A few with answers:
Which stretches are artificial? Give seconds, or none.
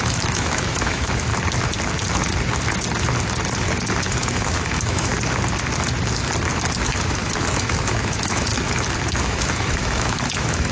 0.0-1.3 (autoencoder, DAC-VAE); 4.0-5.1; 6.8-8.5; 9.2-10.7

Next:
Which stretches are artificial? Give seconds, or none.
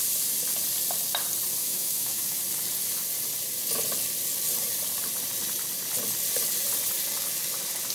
1.6-2.4 (autoencoder, DAC-VAE)